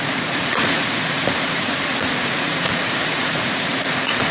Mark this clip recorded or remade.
remade